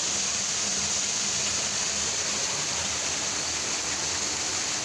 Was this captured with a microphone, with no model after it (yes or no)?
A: yes